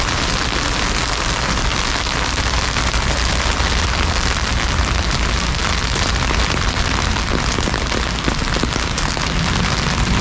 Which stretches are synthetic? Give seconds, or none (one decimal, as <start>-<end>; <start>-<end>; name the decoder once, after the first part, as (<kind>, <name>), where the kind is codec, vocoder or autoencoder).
5.6-7.3 (vocoder, BigVGAN v2)